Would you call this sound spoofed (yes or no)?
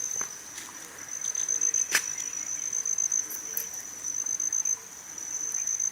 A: no